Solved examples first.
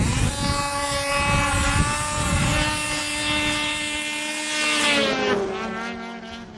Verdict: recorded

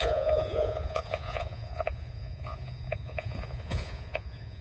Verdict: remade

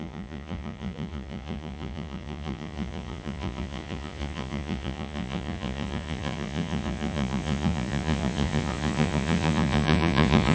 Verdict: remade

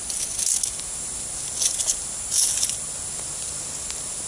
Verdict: recorded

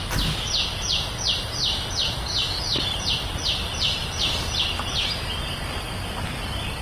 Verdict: recorded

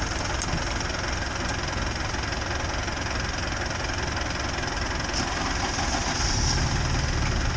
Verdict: recorded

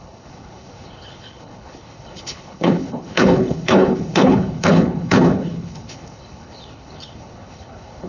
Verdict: remade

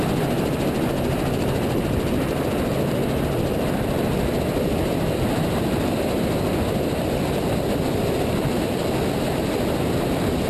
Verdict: recorded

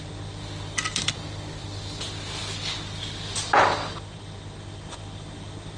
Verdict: recorded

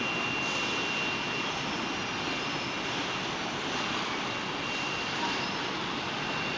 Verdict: recorded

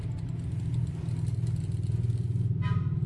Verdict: recorded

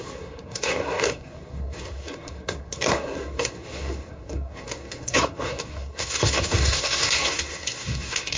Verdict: remade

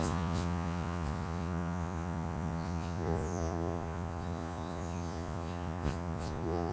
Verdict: remade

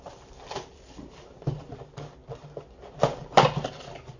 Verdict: recorded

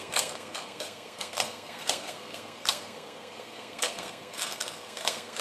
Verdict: remade